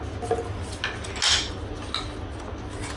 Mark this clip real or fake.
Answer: real